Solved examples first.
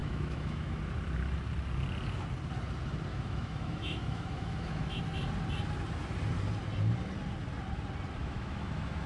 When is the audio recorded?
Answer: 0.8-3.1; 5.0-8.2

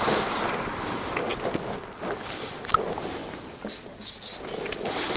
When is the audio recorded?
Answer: 0.0-5.2

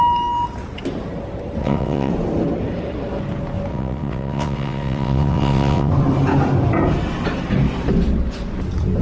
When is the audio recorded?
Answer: 0.0-1.6; 2.1-3.7; 5.9-9.0

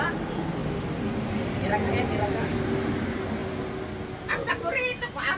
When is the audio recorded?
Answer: 0.0-5.4

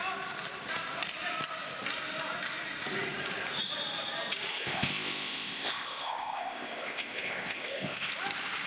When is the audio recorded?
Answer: 0.0-4.5; 8.1-8.7

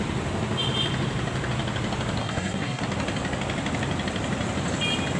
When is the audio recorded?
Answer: 0.0-2.2; 2.8-5.2